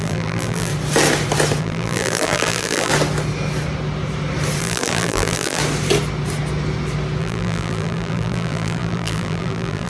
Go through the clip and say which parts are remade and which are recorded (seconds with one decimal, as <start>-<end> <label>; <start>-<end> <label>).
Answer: 0.0-0.7 remade; 0.7-1.6 recorded; 1.6-2.9 remade; 2.9-4.6 recorded; 4.6-5.6 remade; 5.6-7.2 recorded; 7.2-9.9 remade